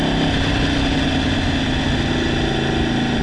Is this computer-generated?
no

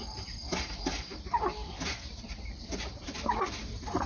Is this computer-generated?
yes